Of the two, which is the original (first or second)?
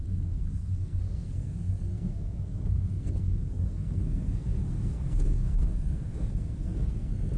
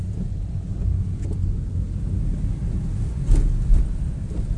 second